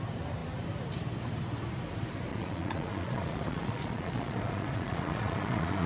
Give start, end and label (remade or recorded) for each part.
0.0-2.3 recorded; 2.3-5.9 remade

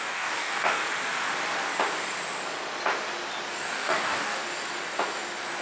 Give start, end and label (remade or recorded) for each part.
0.0-0.8 remade; 0.8-3.6 recorded; 3.6-4.4 remade; 4.4-5.6 recorded